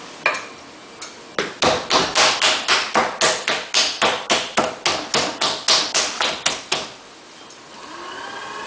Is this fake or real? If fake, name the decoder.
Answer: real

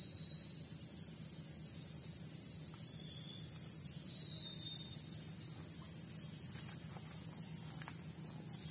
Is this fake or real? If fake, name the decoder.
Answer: real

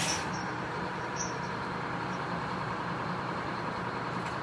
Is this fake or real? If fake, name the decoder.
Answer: fake, vocoder, BigVGAN v2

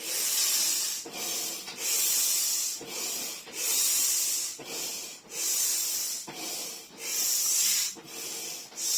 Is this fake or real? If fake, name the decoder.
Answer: real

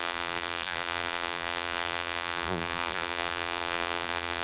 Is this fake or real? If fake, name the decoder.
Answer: fake, vocoder, BigVGAN v2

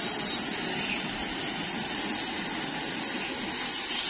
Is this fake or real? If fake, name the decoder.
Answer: real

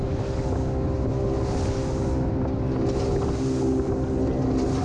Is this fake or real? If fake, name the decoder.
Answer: real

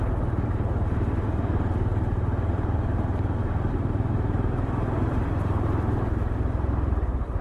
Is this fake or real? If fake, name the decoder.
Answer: fake, vocoder, BigVGAN v2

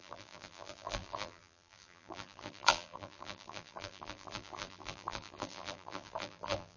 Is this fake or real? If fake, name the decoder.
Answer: fake, vocoder, BigVGAN v2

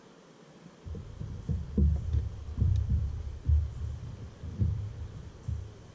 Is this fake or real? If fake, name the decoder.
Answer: fake, vocoder, BigVGAN v2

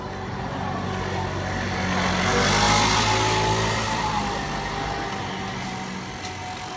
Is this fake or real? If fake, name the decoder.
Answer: real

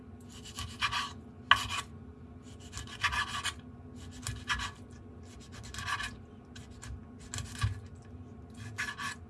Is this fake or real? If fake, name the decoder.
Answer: real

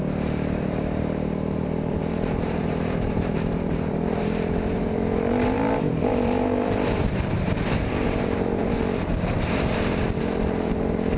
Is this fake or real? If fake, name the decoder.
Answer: fake, vocoder, BigVGAN v2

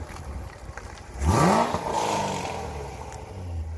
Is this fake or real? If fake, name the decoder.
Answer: real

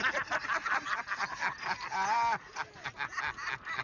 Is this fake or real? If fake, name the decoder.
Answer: real